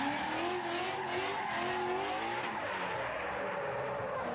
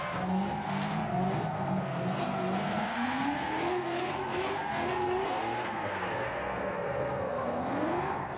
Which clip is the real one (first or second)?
first